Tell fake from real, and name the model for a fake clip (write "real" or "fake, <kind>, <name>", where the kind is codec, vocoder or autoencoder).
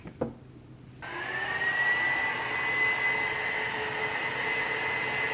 real